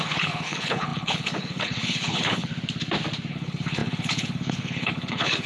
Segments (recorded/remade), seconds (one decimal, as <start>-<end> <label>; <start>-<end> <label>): 0.0-2.5 remade; 2.5-3.3 recorded; 3.3-5.5 remade